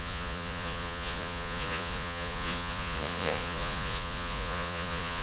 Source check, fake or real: fake